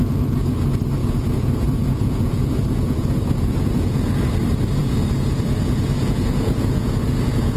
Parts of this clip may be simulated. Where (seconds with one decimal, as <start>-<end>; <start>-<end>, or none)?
0.0-0.6; 1.0-4.3; 4.8-7.6

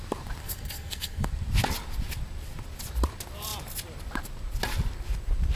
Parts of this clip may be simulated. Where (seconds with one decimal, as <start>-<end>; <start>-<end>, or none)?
0.4-1.3

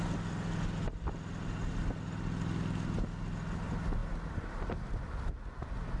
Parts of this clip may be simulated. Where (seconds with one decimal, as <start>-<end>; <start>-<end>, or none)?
none

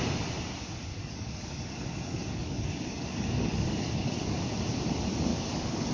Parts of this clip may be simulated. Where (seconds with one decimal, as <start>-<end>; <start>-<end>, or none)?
0.9-4.4; 5.3-5.9

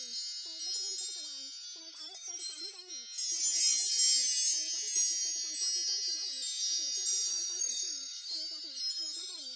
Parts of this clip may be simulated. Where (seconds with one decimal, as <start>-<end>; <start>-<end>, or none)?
1.8-2.9; 7.3-9.6

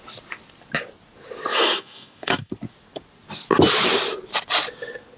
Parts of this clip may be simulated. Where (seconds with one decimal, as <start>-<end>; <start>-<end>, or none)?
1.5-2.5

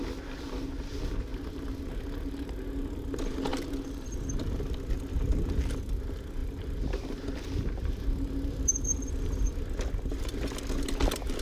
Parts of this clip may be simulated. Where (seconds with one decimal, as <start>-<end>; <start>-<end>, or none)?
none